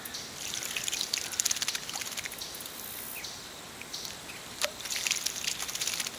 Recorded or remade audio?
recorded